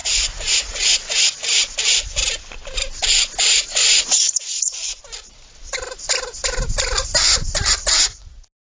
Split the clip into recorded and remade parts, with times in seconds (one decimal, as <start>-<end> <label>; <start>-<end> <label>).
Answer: 0.0-1.2 remade; 1.2-3.8 recorded; 3.8-5.0 remade; 5.0-8.8 recorded